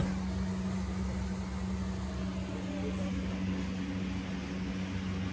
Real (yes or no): yes